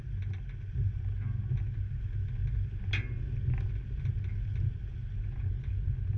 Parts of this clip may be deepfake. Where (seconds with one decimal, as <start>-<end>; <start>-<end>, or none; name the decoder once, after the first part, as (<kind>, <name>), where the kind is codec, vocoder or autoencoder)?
none

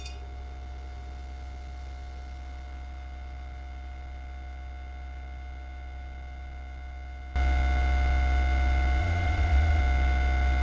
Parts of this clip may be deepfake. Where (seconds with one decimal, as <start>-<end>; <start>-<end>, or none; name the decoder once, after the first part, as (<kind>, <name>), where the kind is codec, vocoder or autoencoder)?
9.0-9.8 (vocoder, Vocos)

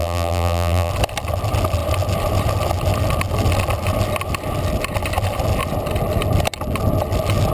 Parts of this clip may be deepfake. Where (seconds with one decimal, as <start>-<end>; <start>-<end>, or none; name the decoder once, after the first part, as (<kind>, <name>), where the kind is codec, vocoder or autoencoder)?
0.0-0.9 (vocoder, BigVGAN v2)

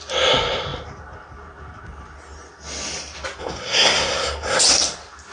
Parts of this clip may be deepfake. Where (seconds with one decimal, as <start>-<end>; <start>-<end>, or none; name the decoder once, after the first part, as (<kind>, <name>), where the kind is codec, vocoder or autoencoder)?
3.4-4.6 (codec, SNAC)